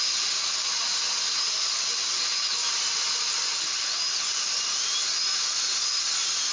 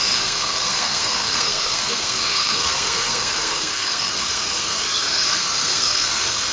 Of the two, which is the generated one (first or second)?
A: second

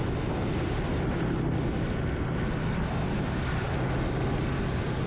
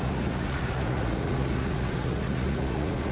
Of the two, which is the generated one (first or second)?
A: second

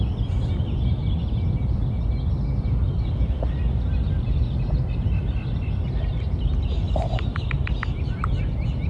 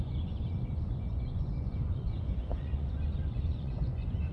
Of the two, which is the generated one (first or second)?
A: second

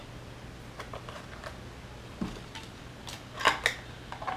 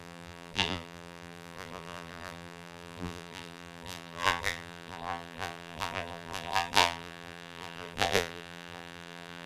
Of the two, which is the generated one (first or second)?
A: second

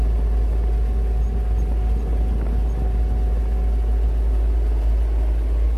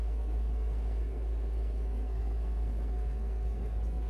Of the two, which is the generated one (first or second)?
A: second